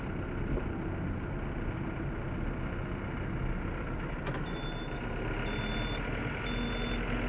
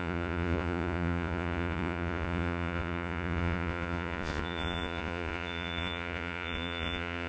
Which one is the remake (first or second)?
second